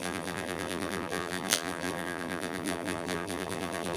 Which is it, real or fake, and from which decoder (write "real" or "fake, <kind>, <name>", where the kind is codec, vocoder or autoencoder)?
fake, vocoder, BigVGAN v2